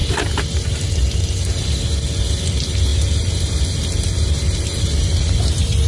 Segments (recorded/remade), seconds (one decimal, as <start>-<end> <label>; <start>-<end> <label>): 0.0-2.2 recorded; 2.2-2.9 remade; 2.9-4.8 recorded; 4.8-5.9 remade